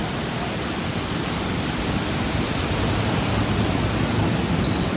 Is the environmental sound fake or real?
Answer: fake